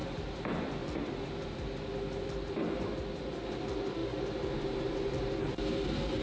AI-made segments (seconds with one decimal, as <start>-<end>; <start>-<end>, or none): none